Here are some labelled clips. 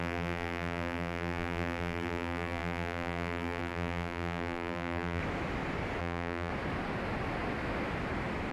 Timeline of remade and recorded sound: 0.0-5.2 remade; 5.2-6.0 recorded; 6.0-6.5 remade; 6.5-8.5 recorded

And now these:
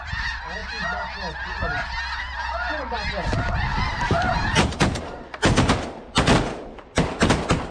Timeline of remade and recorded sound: 0.0-3.9 recorded; 3.9-4.8 remade; 4.8-7.7 recorded

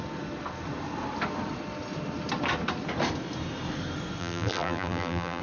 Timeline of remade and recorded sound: 0.0-4.2 recorded; 4.2-5.4 remade

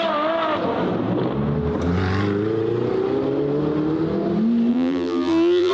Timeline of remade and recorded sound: 0.0-4.7 recorded; 4.7-5.7 remade

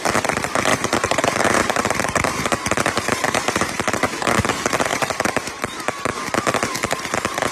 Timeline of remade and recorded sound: 0.0-0.7 recorded; 0.7-4.5 remade; 4.5-4.9 recorded; 4.9-6.3 remade; 6.3-7.5 recorded

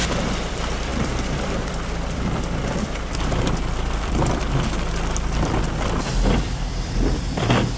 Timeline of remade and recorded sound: 0.0-7.8 remade

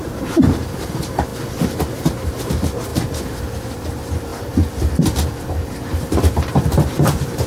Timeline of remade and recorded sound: 0.0-1.3 remade; 1.3-1.9 recorded; 1.9-2.9 remade; 2.9-3.4 recorded; 3.4-7.5 remade